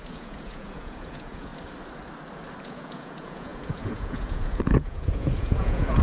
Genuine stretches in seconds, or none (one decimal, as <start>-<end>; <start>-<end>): 1.5-2.6